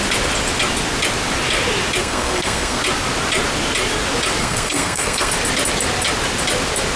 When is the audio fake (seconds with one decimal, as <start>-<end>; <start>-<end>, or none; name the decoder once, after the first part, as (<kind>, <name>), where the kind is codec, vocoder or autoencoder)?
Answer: 2.0-2.8 (codec, SNAC); 4.4-5.3